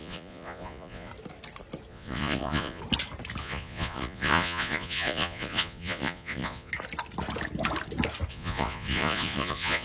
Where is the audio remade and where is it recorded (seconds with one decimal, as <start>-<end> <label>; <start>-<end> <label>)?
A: 0.0-1.1 remade; 1.1-1.9 recorded; 1.9-2.8 remade; 2.8-3.4 recorded; 3.4-6.7 remade; 6.7-8.3 recorded; 8.3-9.8 remade

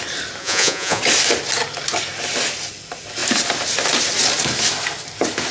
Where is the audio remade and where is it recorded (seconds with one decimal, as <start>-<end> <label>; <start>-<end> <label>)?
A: 0.0-0.4 recorded; 0.4-1.0 remade; 1.0-5.5 recorded

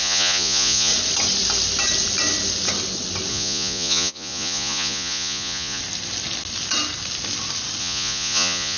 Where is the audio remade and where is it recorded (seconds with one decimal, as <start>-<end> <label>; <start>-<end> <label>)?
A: 0.0-0.9 remade; 0.9-3.3 recorded; 3.3-5.8 remade; 5.8-7.8 recorded; 7.8-8.8 remade